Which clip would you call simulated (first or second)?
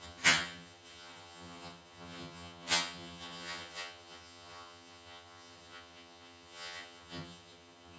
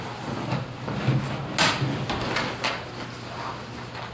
first